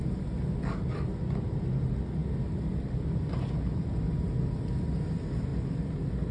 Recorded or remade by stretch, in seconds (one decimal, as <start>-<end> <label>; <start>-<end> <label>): 0.0-6.3 recorded